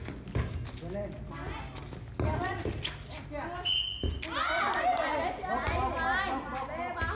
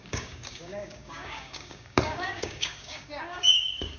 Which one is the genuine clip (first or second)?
first